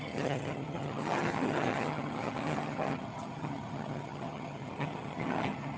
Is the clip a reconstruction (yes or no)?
yes